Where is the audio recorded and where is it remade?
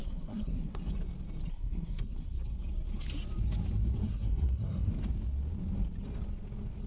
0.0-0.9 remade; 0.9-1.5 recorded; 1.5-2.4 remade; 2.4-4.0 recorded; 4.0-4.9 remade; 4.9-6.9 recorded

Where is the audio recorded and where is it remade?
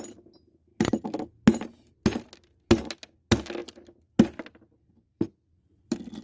0.0-6.2 recorded